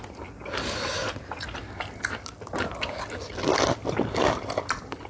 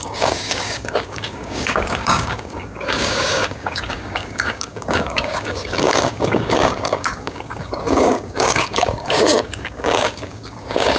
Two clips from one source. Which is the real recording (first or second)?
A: first